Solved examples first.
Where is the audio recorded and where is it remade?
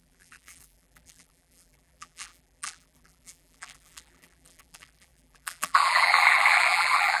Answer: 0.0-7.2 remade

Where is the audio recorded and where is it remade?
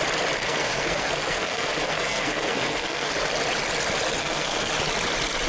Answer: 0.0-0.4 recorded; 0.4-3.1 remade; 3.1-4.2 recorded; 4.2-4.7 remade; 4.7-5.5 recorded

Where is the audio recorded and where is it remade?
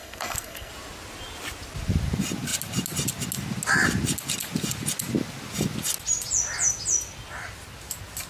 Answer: 0.0-0.7 remade; 0.7-8.3 recorded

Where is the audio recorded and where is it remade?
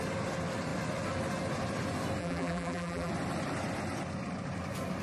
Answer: 0.0-2.2 recorded; 2.2-3.1 remade; 3.1-5.0 recorded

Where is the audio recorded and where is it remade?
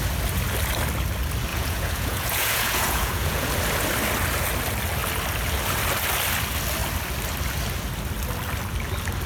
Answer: 0.0-1.5 recorded; 1.5-3.5 remade; 3.5-9.3 recorded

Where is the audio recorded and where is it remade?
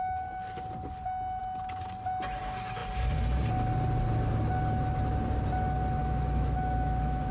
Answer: 0.0-6.0 recorded; 6.0-7.3 remade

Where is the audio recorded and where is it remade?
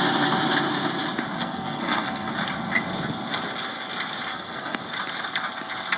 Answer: 0.0-1.4 recorded; 1.4-2.3 remade; 2.3-4.3 recorded; 4.3-4.8 remade; 4.8-6.0 recorded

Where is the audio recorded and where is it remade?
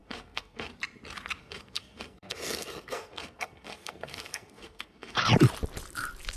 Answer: 0.0-0.7 remade; 0.7-1.4 recorded; 1.4-5.2 remade; 5.2-6.4 recorded